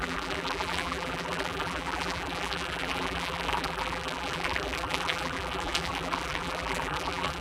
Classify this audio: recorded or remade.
remade